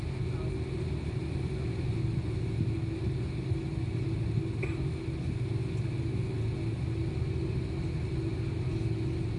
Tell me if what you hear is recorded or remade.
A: recorded